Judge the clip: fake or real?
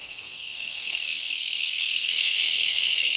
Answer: fake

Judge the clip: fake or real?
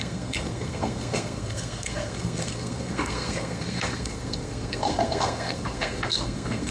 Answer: fake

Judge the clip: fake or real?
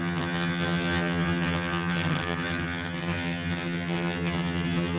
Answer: fake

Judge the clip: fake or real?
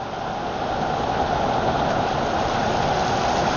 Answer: real